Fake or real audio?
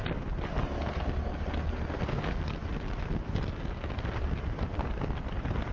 real